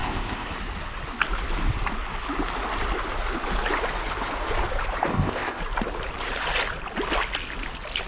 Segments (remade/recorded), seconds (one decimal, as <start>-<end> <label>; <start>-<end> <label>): 0.0-0.5 remade; 0.5-5.1 recorded; 5.1-5.6 remade; 5.6-8.1 recorded